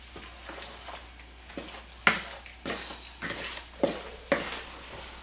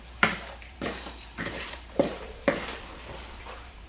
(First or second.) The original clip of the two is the first